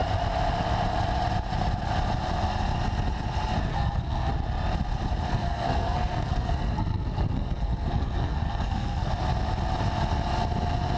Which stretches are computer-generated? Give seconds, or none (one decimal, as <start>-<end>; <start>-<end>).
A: 3.7-4.3; 5.3-9.1

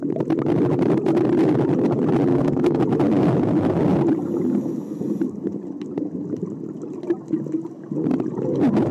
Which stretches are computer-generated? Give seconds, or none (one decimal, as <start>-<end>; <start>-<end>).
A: 2.3-2.8

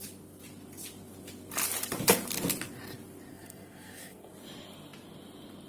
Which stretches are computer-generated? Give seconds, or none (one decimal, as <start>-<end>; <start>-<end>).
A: 3.3-4.3

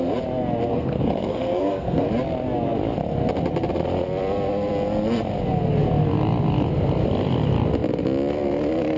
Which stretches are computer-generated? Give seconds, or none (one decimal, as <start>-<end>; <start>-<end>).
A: 0.7-2.1

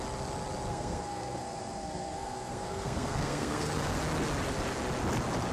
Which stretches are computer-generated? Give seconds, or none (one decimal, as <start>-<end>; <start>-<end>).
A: 0.7-4.0

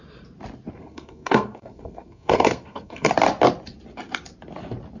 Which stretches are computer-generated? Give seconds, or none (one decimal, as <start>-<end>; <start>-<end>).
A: 0.8-3.1

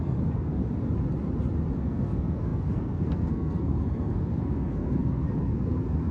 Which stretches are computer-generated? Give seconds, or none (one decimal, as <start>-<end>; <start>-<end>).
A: 0.0-0.6; 1.8-6.1

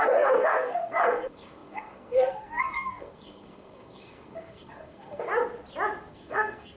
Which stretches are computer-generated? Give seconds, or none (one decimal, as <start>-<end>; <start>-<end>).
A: 0.0-5.3; 6.1-6.8